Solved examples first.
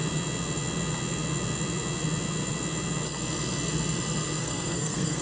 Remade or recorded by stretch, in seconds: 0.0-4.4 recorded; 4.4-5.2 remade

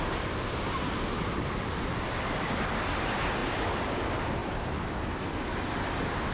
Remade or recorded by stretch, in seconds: 0.0-6.3 recorded

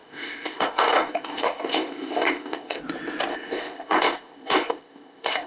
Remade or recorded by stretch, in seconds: 0.0-2.8 remade; 2.8-3.3 recorded; 3.3-5.5 remade